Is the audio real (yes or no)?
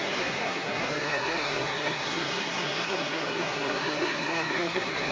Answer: no